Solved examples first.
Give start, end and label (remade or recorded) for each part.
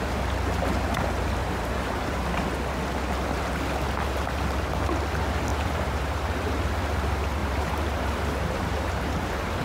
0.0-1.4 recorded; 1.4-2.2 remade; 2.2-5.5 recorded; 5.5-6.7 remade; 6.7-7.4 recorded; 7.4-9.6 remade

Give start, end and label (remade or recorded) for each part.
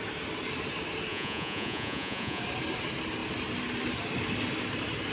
0.0-1.1 recorded; 1.1-2.4 remade; 2.4-5.1 recorded